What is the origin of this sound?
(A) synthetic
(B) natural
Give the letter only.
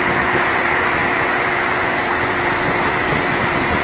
A